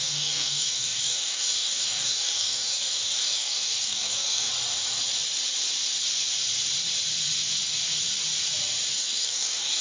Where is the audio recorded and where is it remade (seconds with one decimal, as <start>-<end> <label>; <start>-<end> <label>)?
0.0-4.5 remade; 4.5-8.9 recorded; 8.9-9.8 remade